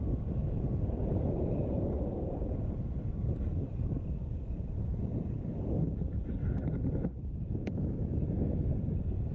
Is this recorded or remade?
remade